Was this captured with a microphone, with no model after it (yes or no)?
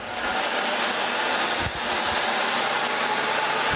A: yes